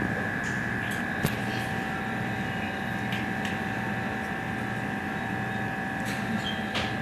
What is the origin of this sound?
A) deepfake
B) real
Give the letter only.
B